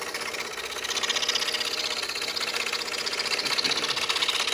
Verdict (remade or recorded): recorded